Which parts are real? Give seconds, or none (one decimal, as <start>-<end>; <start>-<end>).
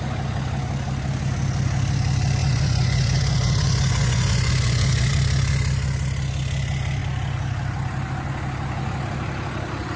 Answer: 0.0-2.4; 5.1-10.0